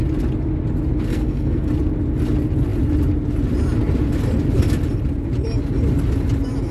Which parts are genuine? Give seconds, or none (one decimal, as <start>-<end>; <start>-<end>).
0.0-1.1; 1.7-6.7